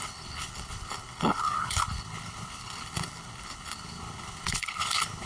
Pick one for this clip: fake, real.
fake